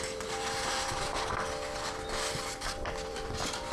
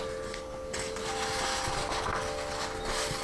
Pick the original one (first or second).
second